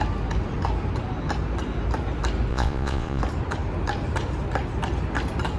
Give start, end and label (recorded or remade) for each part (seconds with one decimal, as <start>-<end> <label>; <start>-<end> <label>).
0.0-2.5 recorded; 2.5-3.2 remade; 3.2-5.6 recorded